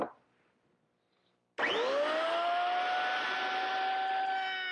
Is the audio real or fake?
real